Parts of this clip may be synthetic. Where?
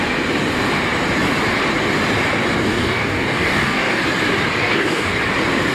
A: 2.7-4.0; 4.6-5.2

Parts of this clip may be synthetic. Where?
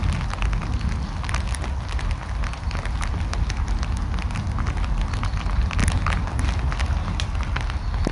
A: none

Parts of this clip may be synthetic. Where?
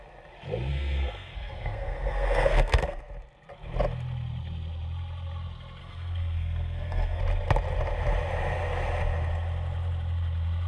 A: 0.7-3.0; 5.8-7.2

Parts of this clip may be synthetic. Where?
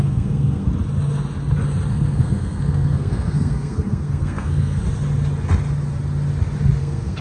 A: 0.0-0.7; 1.9-4.8; 6.8-7.2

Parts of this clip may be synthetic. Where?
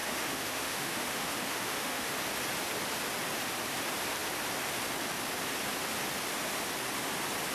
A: 0.0-2.1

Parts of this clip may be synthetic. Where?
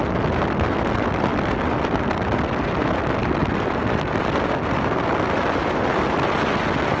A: none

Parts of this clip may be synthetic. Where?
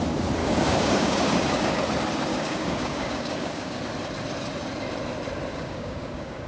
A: 0.4-1.8; 2.3-3.8; 5.5-6.5